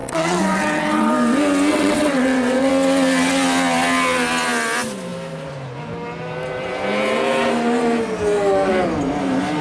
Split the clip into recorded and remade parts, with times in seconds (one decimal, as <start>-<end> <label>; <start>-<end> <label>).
0.0-1.1 remade; 1.1-1.7 recorded; 1.7-2.7 remade; 2.7-9.6 recorded